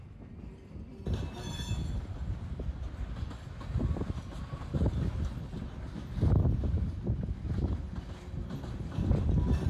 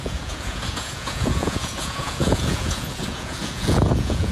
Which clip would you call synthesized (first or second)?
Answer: second